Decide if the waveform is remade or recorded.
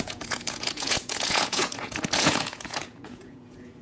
remade